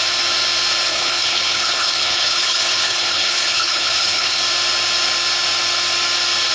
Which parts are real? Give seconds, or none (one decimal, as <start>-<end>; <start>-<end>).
0.0-0.9; 4.4-6.5